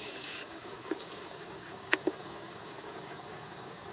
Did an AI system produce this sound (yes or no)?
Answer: yes